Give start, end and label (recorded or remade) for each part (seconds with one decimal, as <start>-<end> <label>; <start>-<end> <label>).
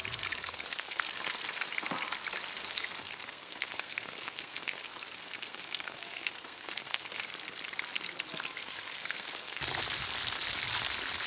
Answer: 0.0-0.4 recorded; 0.4-1.0 remade; 1.0-2.6 recorded; 2.6-7.3 remade; 7.3-8.6 recorded; 8.6-9.6 remade; 9.6-11.3 recorded